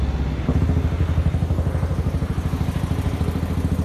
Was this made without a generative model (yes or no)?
yes